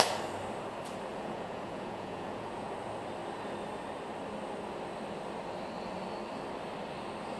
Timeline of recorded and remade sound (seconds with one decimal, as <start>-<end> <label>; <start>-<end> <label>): 0.0-1.1 recorded; 1.1-2.7 remade; 2.7-7.4 recorded